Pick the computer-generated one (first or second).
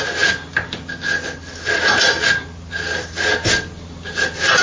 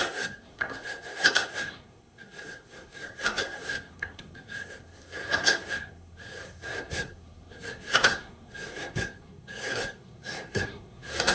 second